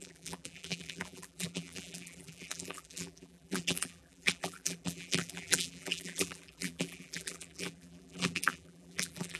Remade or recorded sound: remade